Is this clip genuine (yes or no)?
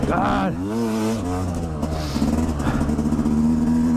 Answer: yes